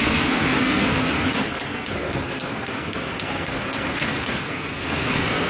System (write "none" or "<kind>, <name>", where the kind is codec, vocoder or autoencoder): codec, SNAC